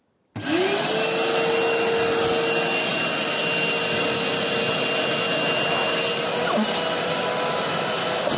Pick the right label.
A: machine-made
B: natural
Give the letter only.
B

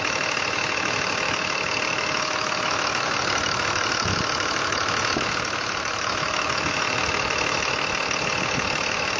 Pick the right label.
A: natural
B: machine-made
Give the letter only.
B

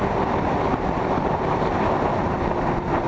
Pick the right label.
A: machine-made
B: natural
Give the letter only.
B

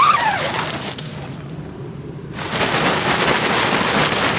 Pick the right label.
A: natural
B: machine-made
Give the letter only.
A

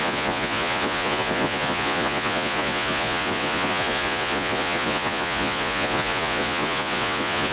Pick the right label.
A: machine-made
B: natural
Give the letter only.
A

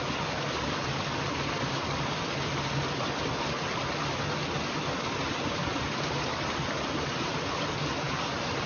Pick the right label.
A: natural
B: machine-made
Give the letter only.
A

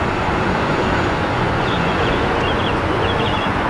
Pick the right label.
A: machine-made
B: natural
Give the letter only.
A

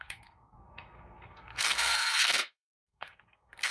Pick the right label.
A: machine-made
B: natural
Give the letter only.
A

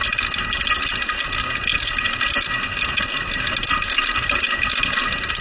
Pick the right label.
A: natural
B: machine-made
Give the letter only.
A